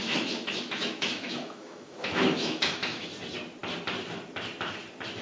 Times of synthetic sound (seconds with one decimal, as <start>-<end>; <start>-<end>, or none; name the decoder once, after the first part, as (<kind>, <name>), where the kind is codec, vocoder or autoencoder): 0.0-3.1 (autoencoder, DAC-VAE)